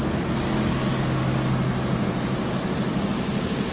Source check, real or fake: real